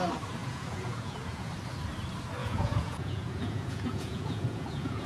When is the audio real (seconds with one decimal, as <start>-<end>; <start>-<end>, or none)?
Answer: 0.0-0.4; 1.5-2.4

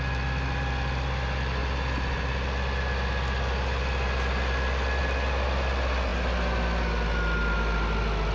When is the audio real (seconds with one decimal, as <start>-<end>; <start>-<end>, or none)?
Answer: 0.0-8.3

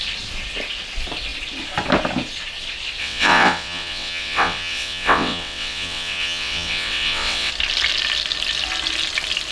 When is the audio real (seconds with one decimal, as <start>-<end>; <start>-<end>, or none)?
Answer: 0.0-3.0; 7.5-9.5

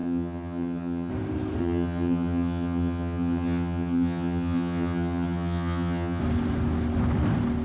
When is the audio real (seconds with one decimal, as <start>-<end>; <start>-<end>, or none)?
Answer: 1.1-1.6; 6.2-7.6

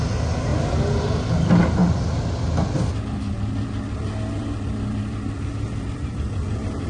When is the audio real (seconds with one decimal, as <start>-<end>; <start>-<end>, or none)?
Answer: 0.0-6.9

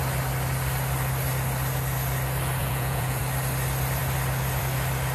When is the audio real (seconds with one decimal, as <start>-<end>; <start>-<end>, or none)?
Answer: 0.0-2.6; 3.2-5.1

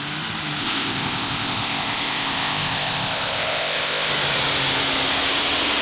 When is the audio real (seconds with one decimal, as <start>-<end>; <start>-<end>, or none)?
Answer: 0.0-0.6; 4.1-5.8

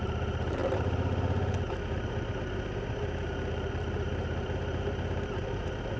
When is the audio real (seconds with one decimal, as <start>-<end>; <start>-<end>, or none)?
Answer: 0.6-3.7